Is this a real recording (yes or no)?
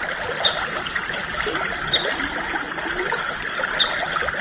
yes